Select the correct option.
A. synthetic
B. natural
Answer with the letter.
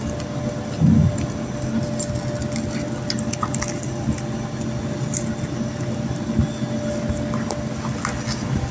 B